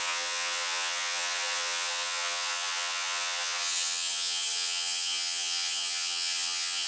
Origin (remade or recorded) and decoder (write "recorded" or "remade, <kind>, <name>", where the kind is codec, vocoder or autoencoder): remade, vocoder, HiFi-GAN